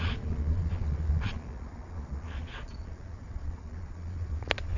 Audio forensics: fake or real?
fake